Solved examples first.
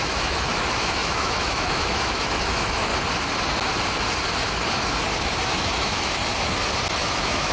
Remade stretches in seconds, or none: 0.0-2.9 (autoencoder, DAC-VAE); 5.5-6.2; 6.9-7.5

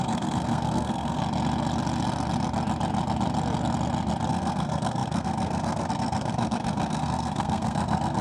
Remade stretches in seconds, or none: 0.0-1.2 (codec, SNAC); 4.3-8.2

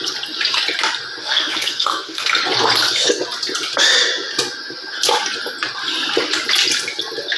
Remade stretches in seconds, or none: 1.2-2.4 (codec, SNAC)

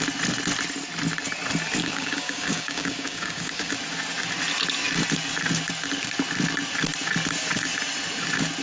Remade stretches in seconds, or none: 1.8-3.7 (codec, DAC)

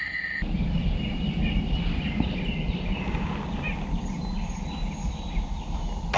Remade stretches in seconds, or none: none

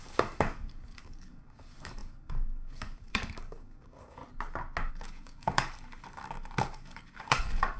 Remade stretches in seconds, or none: 0.0-4.2 (codec, DAC); 4.9-7.8